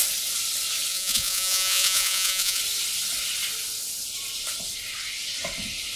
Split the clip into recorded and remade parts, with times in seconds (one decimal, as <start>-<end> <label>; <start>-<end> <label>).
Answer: 0.0-0.9 recorded; 0.9-2.6 remade; 2.6-6.0 recorded